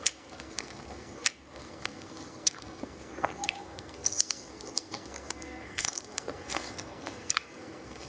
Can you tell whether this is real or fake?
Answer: fake